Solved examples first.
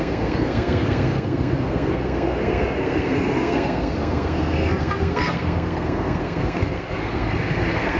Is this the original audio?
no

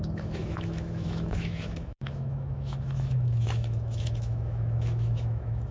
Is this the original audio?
no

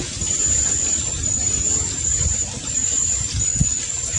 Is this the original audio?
yes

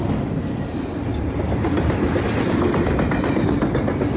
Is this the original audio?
yes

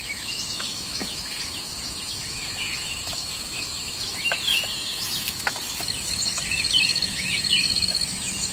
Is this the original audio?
no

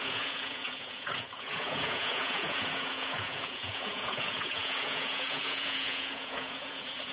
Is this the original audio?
no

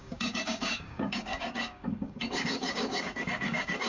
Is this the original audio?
no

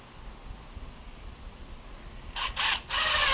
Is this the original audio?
yes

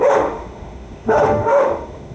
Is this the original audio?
no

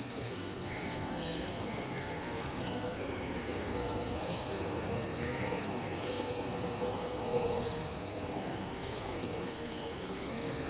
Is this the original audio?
no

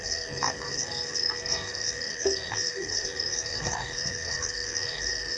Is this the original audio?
no